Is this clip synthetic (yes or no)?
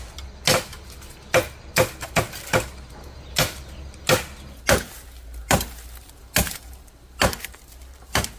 no